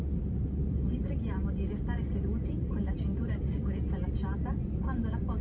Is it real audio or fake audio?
real